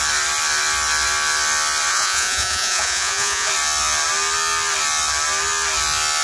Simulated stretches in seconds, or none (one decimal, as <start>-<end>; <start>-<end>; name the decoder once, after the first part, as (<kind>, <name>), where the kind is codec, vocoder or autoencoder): 1.9-3.5 (vocoder, Vocos)